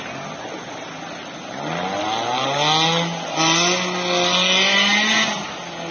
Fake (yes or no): no